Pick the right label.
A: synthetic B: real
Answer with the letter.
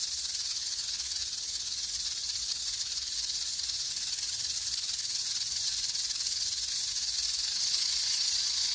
A